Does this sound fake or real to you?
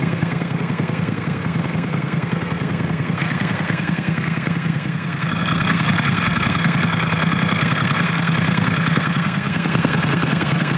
fake